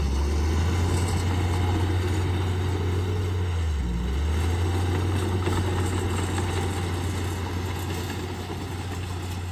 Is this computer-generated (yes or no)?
no